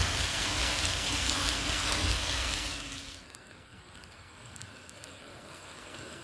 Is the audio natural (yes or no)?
no